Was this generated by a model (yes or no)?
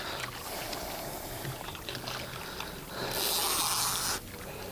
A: no